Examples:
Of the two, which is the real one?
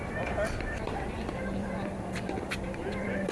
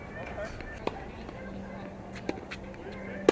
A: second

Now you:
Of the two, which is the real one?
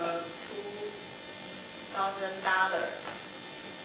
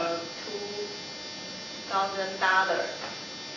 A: second